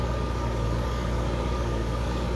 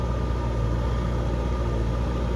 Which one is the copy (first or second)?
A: first